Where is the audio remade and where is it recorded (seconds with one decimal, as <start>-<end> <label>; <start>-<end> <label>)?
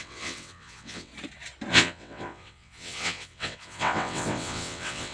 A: 0.0-1.1 remade; 1.1-1.7 recorded; 1.7-5.1 remade